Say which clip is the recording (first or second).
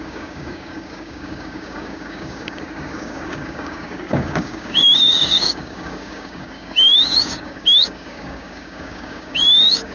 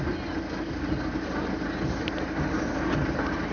second